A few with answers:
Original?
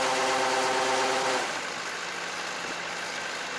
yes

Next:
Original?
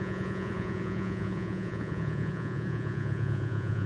no